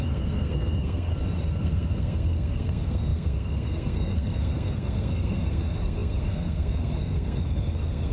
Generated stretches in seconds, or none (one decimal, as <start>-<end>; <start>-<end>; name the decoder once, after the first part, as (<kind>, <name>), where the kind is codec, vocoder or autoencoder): 0.0-1.1 (codec, SNAC); 1.6-8.1